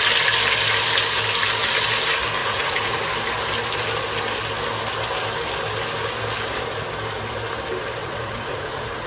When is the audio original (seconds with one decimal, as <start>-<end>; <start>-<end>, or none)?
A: 0.0-2.4; 3.0-8.0